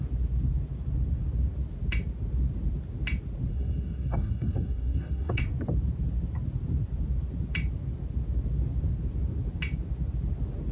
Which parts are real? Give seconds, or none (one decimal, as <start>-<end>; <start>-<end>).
0.0-3.5; 5.4-10.7